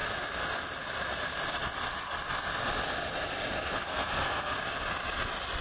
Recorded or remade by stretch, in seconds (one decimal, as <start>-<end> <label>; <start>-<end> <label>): 0.0-3.9 recorded; 3.9-4.6 remade; 4.6-5.6 recorded